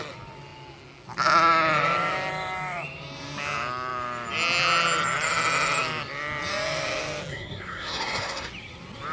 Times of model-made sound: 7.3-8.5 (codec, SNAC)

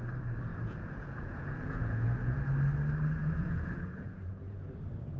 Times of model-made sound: 0.5-2.4 (vocoder, Vocos); 3.2-4.8

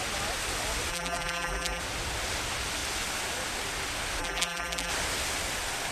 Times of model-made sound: 0.9-1.8 (vocoder, BigVGAN v2); 4.2-4.9

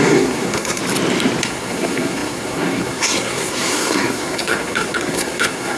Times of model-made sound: 0.0-0.8 (codec, SNAC); 1.4-5.8

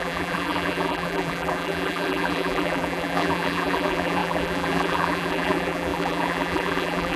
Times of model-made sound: 0.0-7.2 (vocoder, BigVGAN v2)

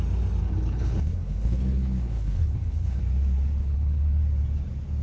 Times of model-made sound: 0.4-3.0 (codec, HILCodec); 3.6-4.2

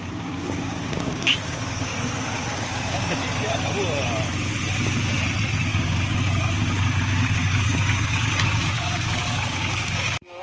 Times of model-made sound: 0.0-1.9 (codec, DAC); 2.5-3.2; 5.6-10.4